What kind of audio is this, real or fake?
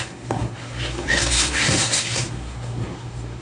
fake